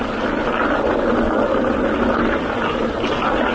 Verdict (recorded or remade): recorded